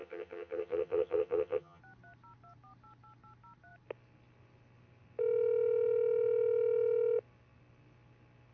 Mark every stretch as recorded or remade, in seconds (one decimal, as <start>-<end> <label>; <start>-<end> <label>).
0.0-1.8 remade; 1.8-8.5 recorded